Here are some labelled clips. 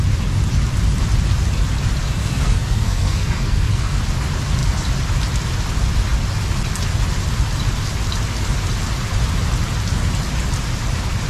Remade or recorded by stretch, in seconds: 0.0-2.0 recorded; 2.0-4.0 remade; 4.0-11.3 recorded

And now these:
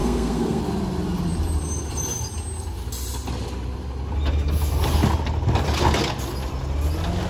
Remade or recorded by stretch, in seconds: 0.0-0.6 remade; 0.6-7.3 recorded

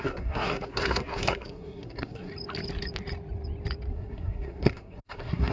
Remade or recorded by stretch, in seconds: 0.0-2.3 remade; 2.3-3.9 recorded; 3.9-5.5 remade

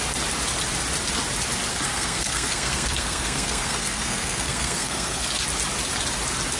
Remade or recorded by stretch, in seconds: 0.0-1.7 recorded; 1.7-5.3 remade; 5.3-6.6 recorded

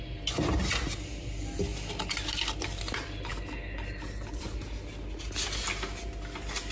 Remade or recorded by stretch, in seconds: 0.0-6.7 recorded

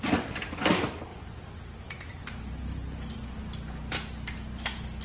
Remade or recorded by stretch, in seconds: 0.0-5.0 recorded

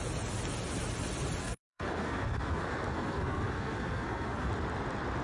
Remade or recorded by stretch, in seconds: 0.0-1.4 recorded; 1.4-4.5 remade; 4.5-5.2 recorded